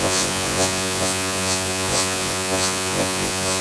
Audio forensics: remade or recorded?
remade